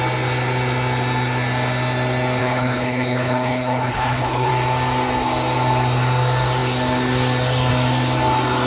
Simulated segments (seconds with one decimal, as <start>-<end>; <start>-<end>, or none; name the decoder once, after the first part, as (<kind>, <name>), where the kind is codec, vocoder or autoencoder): 2.4-4.5 (codec, HILCodec)